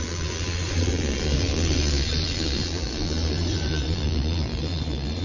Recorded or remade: remade